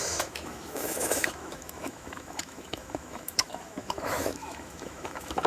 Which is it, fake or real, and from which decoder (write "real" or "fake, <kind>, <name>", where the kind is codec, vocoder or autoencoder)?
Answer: fake, autoencoder, DAC-VAE